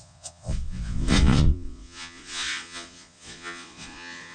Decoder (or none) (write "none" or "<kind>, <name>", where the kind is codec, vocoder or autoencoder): vocoder, Vocos